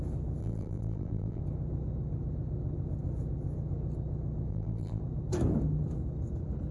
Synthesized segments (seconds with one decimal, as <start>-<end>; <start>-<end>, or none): 0.4-1.4; 4.5-5.0